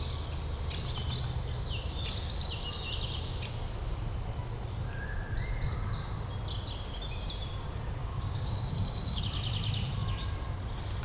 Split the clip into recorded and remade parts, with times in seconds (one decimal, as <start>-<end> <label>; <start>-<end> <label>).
0.0-8.0 recorded; 8.0-9.2 remade; 9.2-11.0 recorded